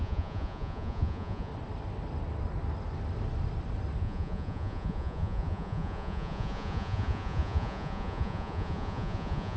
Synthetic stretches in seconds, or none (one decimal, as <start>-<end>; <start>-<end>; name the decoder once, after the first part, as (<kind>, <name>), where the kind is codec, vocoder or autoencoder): 0.0-1.5 (vocoder, Vocos); 4.0-9.6